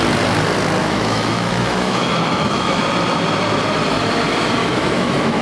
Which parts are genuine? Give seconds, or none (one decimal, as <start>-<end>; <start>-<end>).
0.0-0.8; 2.8-4.6